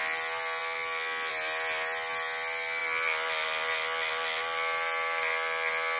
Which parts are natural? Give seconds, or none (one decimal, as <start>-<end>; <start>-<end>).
0.0-6.0